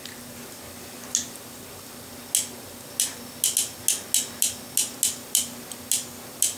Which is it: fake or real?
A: real